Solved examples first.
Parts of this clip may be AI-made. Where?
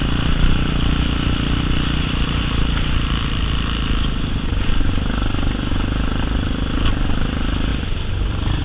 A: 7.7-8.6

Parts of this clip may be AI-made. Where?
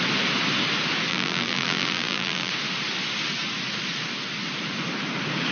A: 1.1-2.5